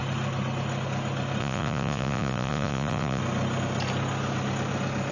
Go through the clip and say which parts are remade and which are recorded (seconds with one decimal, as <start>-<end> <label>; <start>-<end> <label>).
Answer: 0.0-1.4 recorded; 1.4-3.2 remade; 3.2-5.1 recorded